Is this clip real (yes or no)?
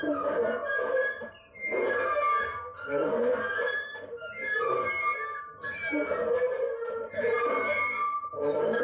no